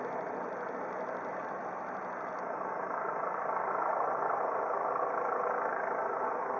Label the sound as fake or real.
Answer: real